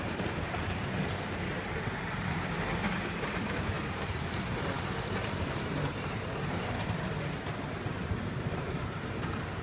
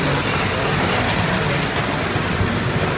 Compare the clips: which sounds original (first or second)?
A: second